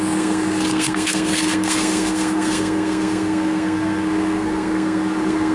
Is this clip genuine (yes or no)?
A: no